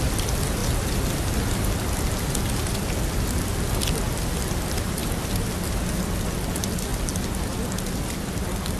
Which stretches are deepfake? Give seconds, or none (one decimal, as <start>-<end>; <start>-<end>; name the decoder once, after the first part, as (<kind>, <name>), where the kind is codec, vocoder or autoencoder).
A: none